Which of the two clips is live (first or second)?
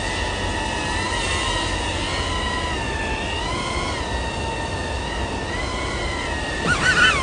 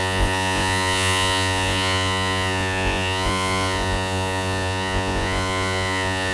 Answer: first